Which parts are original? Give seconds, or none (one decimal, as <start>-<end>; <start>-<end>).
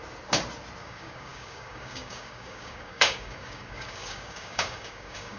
0.0-0.8